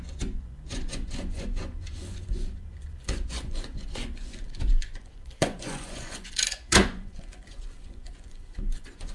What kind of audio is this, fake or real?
fake